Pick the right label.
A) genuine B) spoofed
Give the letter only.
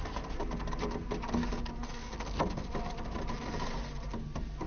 A